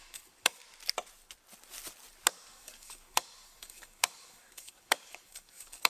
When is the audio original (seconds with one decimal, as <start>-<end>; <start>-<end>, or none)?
0.6-2.3